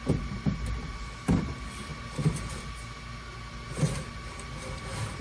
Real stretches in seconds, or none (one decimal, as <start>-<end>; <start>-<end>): 0.0-5.2